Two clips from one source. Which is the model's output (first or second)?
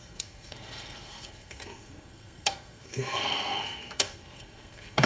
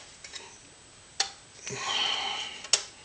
first